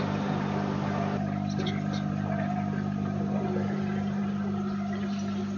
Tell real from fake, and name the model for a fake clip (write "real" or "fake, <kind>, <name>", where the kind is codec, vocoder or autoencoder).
real